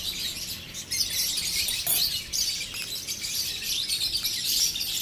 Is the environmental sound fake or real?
real